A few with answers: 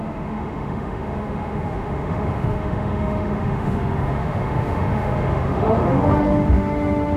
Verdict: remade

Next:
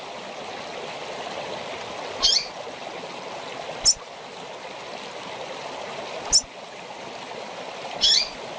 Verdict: recorded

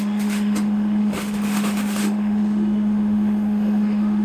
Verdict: remade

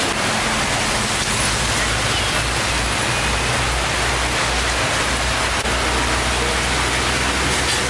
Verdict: recorded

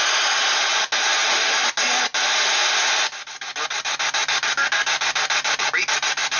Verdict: recorded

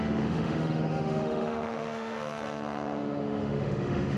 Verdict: remade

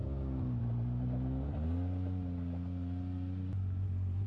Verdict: recorded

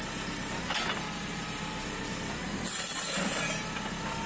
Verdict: recorded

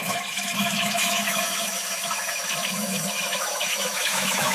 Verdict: remade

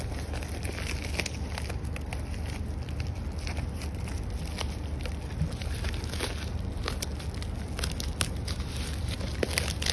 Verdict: recorded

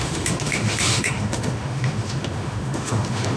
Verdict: remade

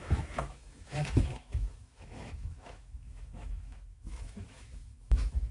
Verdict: remade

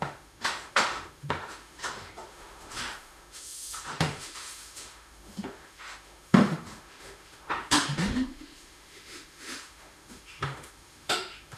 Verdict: remade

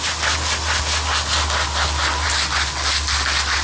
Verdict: recorded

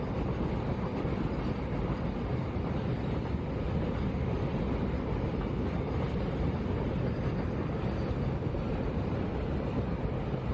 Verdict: recorded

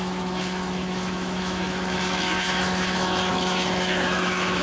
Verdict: remade